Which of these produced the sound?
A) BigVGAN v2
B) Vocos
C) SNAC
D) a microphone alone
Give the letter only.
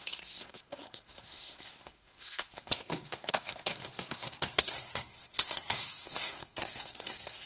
C